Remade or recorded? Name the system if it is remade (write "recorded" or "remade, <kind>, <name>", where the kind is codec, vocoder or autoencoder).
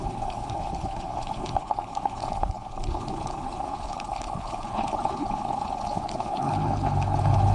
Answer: remade, codec, HILCodec